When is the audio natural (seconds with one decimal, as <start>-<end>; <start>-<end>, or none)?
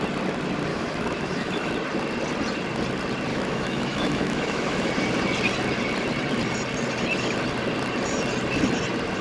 0.0-0.7; 1.7-3.3; 4.9-9.2